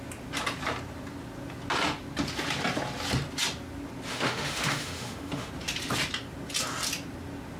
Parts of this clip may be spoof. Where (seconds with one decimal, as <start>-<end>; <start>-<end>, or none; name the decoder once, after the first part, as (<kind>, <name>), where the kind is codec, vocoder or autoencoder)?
4.1-5.5 (autoencoder, DAC-VAE)

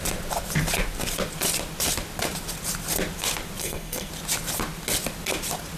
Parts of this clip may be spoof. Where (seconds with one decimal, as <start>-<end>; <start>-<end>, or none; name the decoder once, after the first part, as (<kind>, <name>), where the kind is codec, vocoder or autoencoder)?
3.6-4.1 (codec, SNAC)

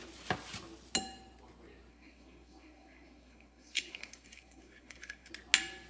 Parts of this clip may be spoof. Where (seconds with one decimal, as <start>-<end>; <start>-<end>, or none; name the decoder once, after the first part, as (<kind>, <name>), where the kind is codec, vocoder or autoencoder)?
1.9-5.3 (codec, SNAC)

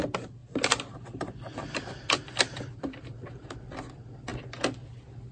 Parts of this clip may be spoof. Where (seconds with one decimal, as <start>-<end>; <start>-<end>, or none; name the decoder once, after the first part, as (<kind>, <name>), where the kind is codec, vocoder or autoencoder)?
0.4-3.6 (vocoder, BigVGAN v2)

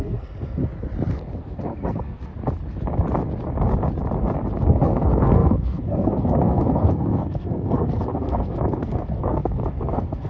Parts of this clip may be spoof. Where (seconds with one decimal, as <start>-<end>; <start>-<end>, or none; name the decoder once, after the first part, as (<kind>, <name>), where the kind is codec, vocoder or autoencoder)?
0.0-0.6 (codec, SNAC); 1.1-2.3; 4.7-10.3